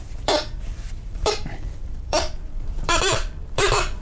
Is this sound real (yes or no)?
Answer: no